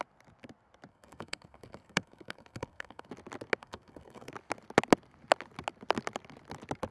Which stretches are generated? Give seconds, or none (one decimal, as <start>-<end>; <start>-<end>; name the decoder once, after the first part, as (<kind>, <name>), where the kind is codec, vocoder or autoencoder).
0.9-3.1 (codec, SNAC); 3.6-4.3